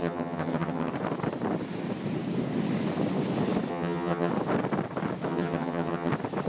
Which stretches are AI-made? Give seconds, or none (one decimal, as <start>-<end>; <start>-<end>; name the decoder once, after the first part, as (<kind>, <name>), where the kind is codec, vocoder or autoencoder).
0.0-0.9 (vocoder, HiFi-GAN); 3.7-4.3; 5.3-6.1